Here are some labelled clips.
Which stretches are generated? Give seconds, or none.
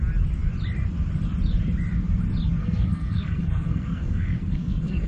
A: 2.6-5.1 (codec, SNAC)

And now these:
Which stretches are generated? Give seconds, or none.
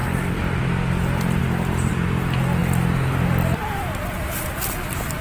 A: none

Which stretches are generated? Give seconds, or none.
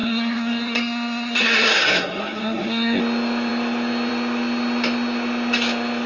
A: 0.0-3.0 (codec, SNAC)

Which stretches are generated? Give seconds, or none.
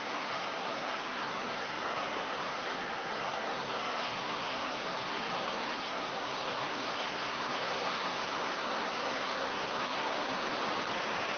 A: 0.0-10.5 (codec, SNAC)